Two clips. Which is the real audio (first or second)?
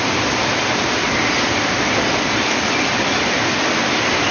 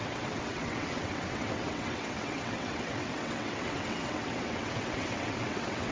first